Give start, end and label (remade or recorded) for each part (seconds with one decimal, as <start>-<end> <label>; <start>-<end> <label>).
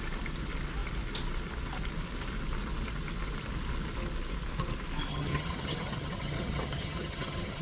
0.0-5.1 recorded; 5.1-7.6 remade